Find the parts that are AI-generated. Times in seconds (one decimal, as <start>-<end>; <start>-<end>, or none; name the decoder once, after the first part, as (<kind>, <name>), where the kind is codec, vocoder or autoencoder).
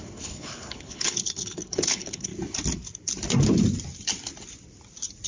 0.0-2.3 (codec, HILCodec)